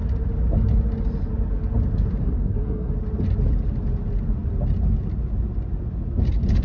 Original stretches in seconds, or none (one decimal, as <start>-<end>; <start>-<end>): 0.0-2.2; 2.9-6.6